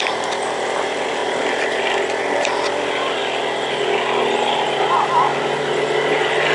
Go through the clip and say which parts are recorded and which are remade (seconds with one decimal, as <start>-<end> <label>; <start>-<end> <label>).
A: 0.0-3.2 remade; 3.2-6.1 recorded; 6.1-6.5 remade